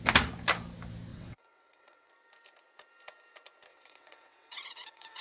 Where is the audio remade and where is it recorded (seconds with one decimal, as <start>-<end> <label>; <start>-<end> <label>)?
0.0-1.1 recorded; 1.1-2.1 remade; 2.1-3.7 recorded; 3.7-5.2 remade